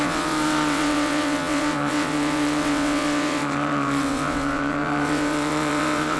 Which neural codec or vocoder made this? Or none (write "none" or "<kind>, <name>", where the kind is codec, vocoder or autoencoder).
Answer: vocoder, WaveNeXt